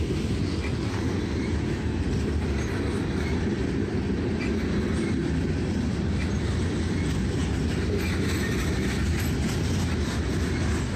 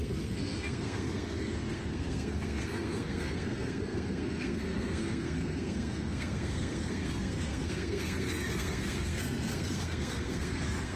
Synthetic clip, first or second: second